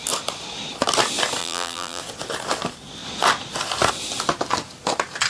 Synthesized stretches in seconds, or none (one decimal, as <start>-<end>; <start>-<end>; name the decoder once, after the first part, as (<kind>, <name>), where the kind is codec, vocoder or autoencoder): 1.4-2.0 (vocoder, BigVGAN v2)